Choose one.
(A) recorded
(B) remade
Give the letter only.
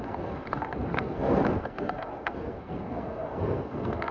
B